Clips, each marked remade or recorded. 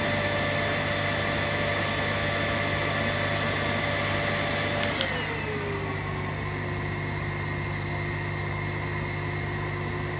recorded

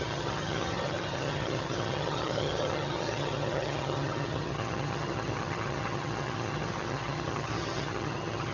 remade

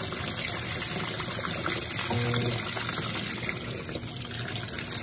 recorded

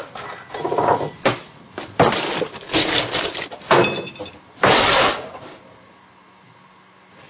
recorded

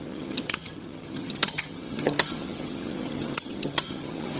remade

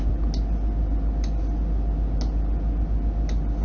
recorded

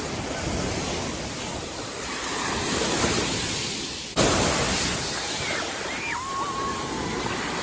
recorded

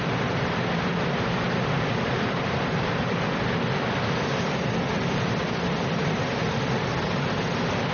recorded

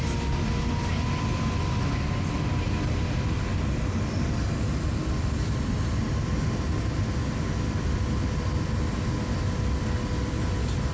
recorded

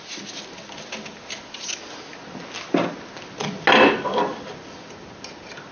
recorded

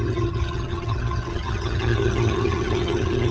remade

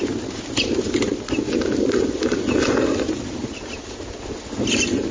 recorded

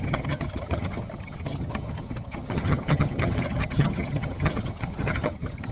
remade